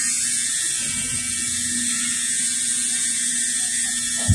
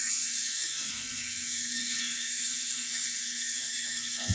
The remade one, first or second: second